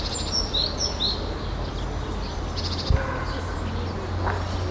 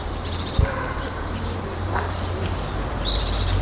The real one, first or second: first